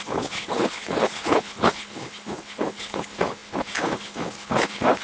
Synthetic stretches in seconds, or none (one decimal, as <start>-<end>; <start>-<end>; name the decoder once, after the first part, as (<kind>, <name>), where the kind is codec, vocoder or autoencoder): 0.0-5.0 (codec, HILCodec)